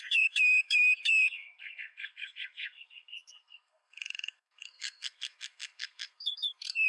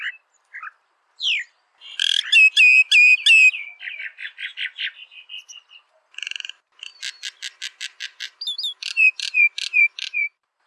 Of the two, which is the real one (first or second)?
second